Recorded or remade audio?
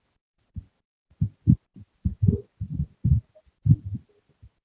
remade